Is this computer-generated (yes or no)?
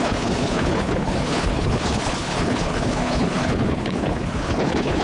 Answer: yes